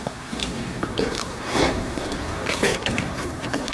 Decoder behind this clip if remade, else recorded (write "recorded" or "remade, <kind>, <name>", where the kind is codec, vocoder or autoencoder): remade, codec, SNAC